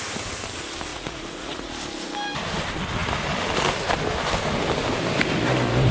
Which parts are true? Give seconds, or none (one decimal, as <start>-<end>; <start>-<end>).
0.0-0.9; 1.7-5.9